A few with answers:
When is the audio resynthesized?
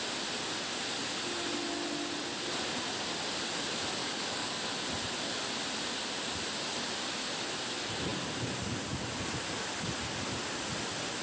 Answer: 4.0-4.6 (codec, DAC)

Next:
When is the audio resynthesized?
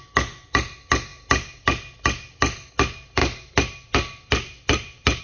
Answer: none